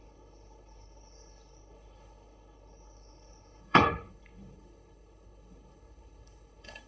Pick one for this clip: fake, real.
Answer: fake